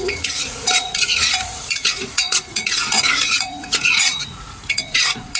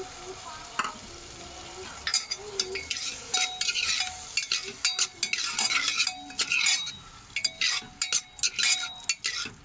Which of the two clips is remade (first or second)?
first